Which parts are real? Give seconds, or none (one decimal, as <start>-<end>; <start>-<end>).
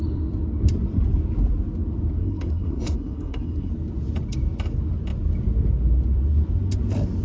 0.0-2.2; 3.7-7.2